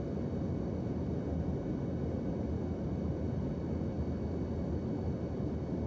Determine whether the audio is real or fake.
real